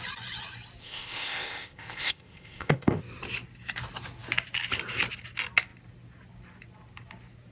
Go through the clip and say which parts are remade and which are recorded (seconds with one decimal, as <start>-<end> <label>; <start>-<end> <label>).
0.0-0.8 recorded; 0.8-3.0 remade; 3.0-7.5 recorded